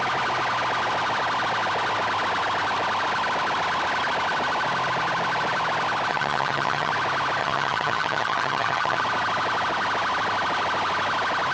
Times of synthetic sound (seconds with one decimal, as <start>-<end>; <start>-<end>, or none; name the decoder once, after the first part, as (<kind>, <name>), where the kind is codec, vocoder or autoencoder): 6.1-6.9 (vocoder, HiFi-GAN); 7.4-9.0